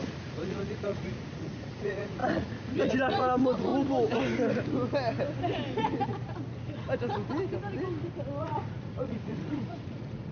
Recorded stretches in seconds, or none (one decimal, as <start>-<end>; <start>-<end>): 3.7-8.4